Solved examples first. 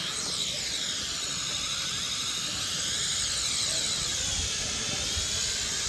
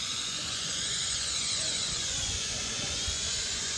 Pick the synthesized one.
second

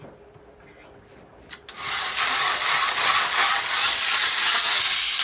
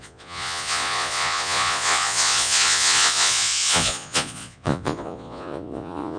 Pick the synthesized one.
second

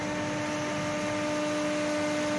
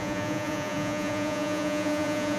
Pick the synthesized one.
second